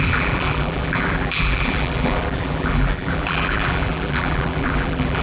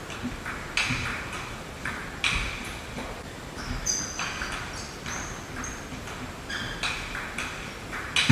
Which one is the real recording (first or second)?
second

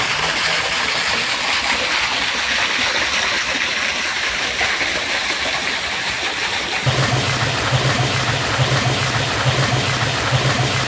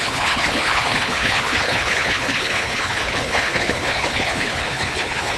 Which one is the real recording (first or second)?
first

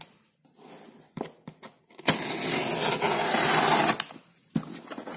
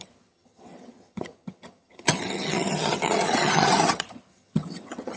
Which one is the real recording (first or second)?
first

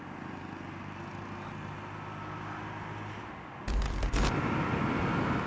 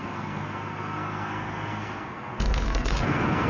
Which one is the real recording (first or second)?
first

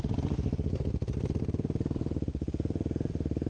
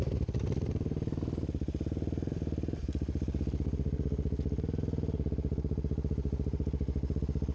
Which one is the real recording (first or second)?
second